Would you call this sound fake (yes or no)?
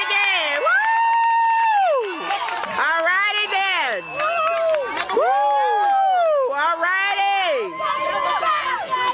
no